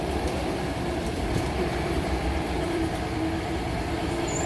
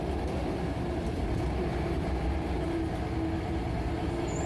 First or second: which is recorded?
second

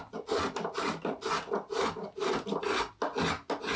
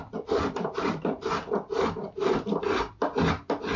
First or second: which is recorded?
first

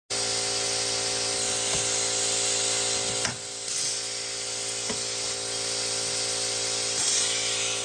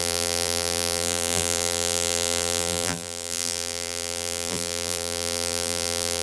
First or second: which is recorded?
first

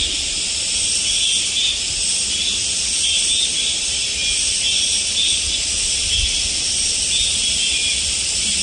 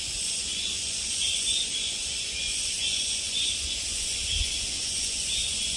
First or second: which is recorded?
first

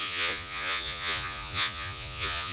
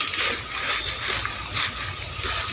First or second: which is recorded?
second